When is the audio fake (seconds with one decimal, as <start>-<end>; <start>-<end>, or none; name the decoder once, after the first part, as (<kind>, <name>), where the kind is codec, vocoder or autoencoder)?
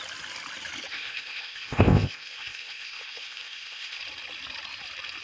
0.9-4.0 (codec, ZipCodec)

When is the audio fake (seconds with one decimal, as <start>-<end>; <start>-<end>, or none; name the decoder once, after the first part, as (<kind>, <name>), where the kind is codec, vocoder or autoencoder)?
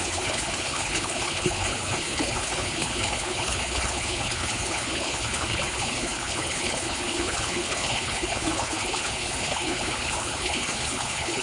0.0-11.4 (codec, HILCodec)